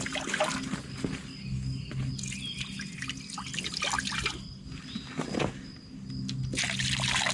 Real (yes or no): yes